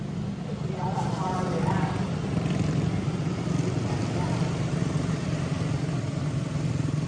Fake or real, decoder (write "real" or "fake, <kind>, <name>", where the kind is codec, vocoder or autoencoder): real